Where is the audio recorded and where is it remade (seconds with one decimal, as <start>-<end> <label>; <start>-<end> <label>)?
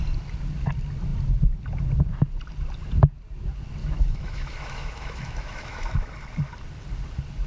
0.0-3.8 recorded; 3.8-6.1 remade; 6.1-7.5 recorded